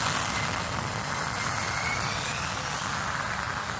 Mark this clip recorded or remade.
remade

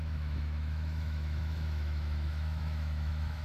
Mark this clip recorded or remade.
remade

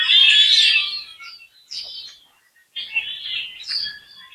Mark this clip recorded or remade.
recorded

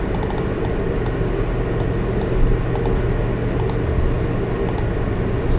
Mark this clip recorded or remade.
recorded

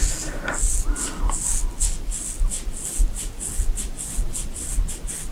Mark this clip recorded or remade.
recorded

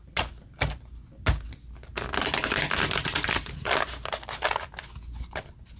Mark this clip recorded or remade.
recorded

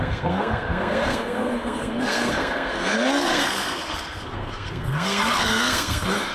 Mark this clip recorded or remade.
remade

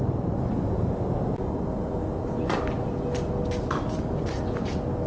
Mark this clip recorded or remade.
recorded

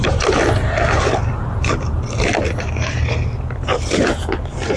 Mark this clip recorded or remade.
remade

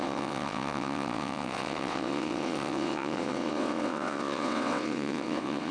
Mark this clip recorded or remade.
remade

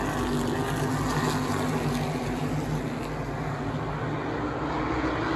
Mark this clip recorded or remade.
recorded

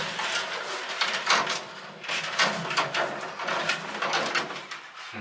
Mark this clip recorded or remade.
recorded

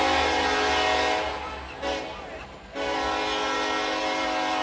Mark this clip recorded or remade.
recorded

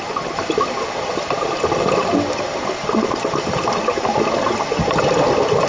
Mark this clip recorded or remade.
recorded